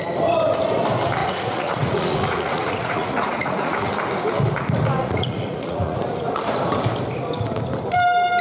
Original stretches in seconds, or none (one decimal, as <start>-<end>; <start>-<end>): 0.0-1.2; 3.9-5.0; 6.0-8.4